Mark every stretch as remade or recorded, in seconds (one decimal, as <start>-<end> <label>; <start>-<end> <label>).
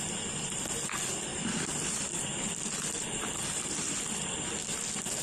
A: 0.0-1.3 recorded; 1.3-4.0 remade; 4.0-5.2 recorded